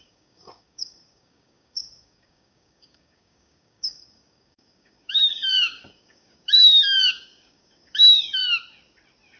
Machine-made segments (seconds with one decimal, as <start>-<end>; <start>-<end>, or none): 0.0-8.4